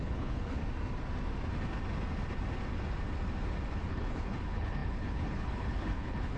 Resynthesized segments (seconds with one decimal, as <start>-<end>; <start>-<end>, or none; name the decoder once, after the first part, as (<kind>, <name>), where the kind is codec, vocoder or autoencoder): 0.0-0.6 (codec, HILCodec); 3.9-6.4

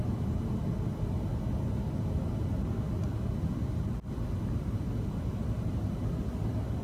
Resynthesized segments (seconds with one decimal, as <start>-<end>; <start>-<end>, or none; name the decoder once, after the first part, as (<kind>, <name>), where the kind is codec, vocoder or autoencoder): none

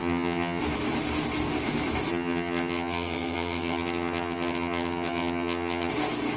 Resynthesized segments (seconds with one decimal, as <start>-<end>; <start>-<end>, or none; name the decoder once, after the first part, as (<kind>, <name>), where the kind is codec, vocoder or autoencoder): 0.0-0.6 (vocoder, HiFi-GAN); 2.1-5.9

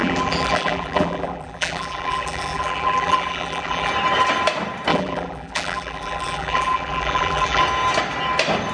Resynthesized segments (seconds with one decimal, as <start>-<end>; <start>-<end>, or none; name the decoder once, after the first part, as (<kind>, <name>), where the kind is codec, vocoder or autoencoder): 0.0-3.9 (vocoder, BigVGAN v2); 4.9-7.6

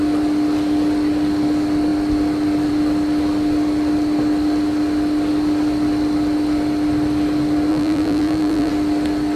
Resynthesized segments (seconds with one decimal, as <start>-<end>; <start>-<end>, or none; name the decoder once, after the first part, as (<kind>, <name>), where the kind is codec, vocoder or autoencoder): 7.7-8.7 (vocoder, BigVGAN v2)